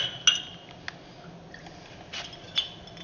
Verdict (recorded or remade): recorded